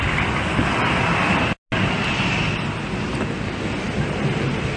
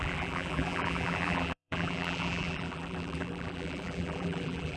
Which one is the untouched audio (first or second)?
first